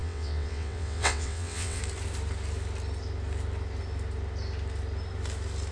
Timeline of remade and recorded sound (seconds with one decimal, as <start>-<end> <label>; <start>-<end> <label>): 0.0-1.8 remade; 1.8-5.7 recorded